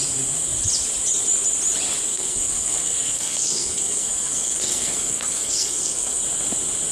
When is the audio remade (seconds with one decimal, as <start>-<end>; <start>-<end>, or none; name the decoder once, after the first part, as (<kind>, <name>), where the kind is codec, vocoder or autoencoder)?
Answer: 2.1-6.2 (codec, SNAC)